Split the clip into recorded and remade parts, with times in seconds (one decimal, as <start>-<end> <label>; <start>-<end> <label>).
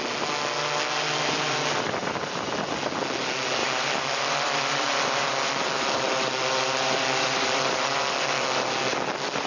0.0-2.0 recorded; 2.0-2.5 remade; 2.5-3.6 recorded; 3.6-8.0 remade; 8.0-9.5 recorded